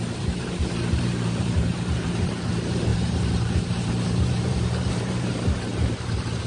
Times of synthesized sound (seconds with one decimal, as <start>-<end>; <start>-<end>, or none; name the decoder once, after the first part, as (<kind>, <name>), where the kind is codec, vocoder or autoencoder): 0.0-6.5 (vocoder, BigVGAN v2)